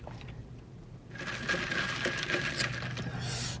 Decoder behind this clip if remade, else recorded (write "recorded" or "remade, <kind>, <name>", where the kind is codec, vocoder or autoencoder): recorded